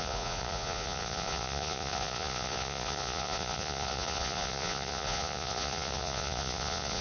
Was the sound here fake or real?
fake